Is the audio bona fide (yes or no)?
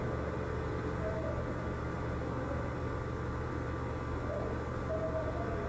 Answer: yes